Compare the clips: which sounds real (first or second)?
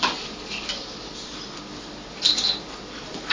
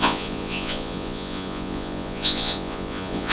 first